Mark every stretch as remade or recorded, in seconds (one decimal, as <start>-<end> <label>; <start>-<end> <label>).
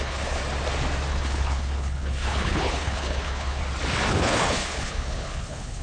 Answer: 0.0-0.4 remade; 0.4-1.1 recorded; 1.1-3.6 remade; 3.6-4.1 recorded; 4.1-5.8 remade